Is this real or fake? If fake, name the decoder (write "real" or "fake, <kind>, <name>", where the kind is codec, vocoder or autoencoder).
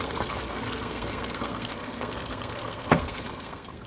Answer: fake, codec, SNAC